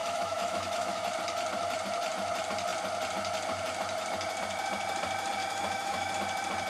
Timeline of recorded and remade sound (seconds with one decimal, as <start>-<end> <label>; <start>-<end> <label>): 0.0-1.0 remade; 1.0-5.4 recorded; 5.4-6.1 remade; 6.1-6.7 recorded